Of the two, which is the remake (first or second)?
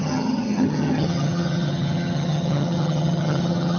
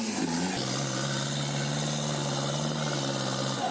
first